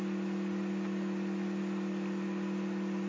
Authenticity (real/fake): real